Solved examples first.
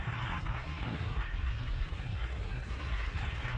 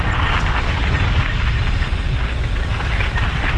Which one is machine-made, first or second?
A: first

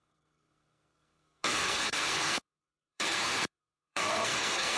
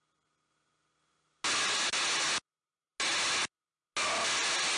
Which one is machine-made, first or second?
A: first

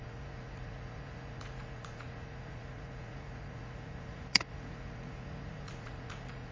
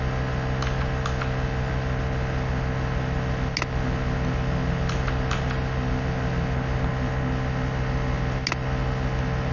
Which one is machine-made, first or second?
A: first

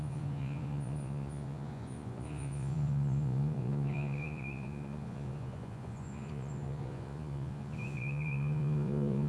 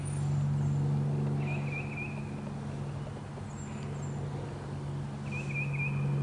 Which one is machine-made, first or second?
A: first